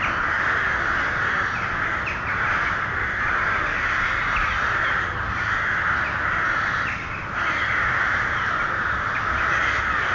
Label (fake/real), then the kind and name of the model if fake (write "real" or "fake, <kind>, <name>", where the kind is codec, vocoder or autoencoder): real